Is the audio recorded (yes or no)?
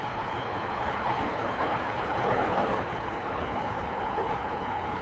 no